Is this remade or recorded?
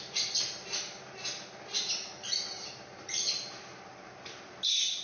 recorded